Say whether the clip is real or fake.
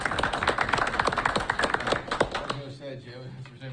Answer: real